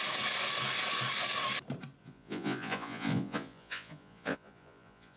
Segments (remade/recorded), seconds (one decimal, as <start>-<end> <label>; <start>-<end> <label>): 0.0-2.0 recorded; 2.0-5.2 remade